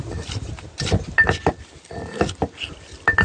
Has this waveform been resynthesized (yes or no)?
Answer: no